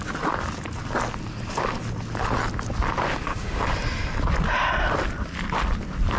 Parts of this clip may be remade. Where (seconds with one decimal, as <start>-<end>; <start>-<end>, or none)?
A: 3.1-3.6